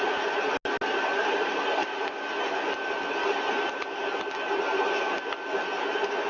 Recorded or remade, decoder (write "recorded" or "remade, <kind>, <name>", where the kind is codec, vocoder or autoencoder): recorded